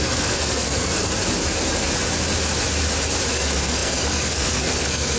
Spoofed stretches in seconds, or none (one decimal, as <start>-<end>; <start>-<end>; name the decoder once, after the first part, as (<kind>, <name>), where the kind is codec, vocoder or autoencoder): 0.0-1.1 (codec, SNAC); 3.3-5.2